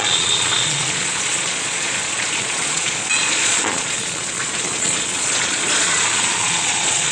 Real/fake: fake